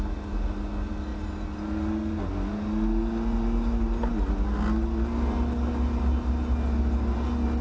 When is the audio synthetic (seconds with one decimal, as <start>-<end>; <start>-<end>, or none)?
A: none